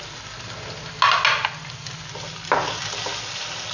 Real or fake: real